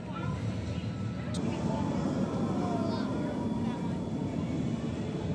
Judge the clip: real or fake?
real